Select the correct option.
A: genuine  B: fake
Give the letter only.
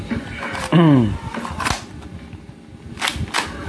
A